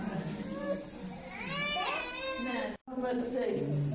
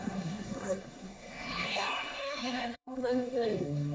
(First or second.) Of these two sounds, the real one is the first